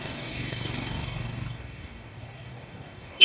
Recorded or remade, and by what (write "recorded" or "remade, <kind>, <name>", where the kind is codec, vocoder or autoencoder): remade, codec, DAC